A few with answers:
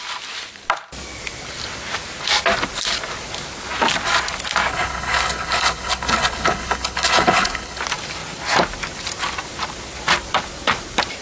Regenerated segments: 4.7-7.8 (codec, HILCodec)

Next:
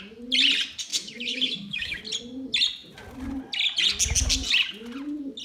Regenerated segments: 0.9-2.0 (autoencoder, DAC-VAE)

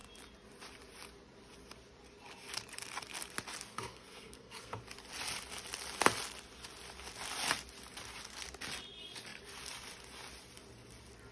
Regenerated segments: 3.7-4.8 (codec, SNAC)

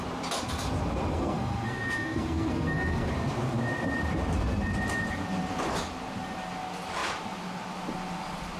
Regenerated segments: 1.1-3.1 (codec, SNAC)